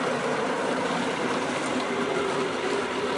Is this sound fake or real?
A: real